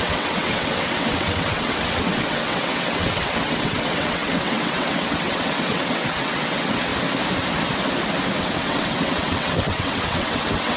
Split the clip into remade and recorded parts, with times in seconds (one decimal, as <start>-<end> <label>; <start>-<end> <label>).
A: 0.0-6.9 remade; 6.9-8.4 recorded; 8.4-10.8 remade